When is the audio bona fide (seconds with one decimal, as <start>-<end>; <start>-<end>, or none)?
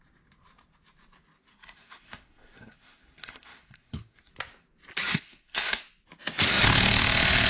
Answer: 0.0-1.5; 4.3-5.1; 5.8-7.5